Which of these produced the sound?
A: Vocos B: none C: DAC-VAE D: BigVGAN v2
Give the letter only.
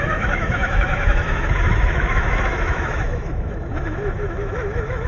C